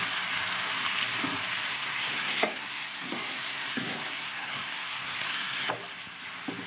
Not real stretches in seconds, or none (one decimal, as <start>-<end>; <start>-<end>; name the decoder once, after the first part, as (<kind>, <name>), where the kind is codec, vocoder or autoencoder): 1.7-5.7 (codec, SNAC)